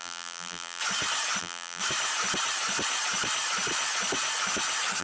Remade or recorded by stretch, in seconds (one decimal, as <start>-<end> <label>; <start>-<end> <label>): 0.0-0.8 remade; 0.8-1.4 recorded; 1.4-1.8 remade; 1.8-5.0 recorded